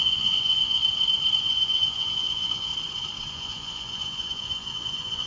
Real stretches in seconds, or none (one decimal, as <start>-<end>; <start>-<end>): 0.8-1.4; 2.7-3.3